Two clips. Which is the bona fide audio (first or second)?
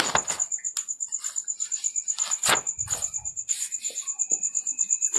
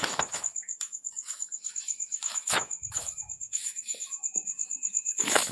first